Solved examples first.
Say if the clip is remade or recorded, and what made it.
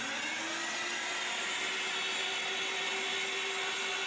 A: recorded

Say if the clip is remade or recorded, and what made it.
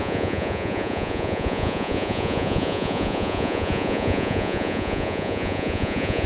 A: remade, vocoder, Vocos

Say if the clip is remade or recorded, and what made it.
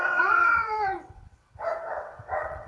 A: remade, vocoder, WaveNeXt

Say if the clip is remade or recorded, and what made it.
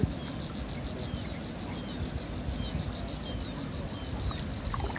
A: recorded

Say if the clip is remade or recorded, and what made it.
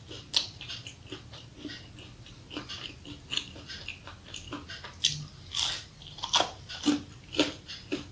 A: recorded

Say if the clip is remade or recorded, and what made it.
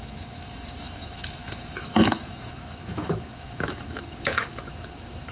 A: remade, autoencoder, DAC-VAE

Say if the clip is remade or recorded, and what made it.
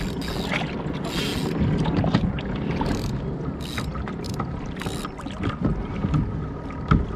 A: recorded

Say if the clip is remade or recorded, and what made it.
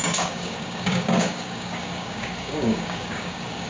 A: remade, codec, DAC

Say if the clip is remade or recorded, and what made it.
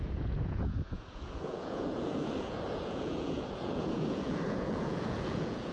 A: remade, vocoder, Vocos